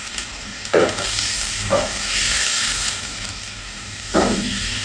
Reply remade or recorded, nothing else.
remade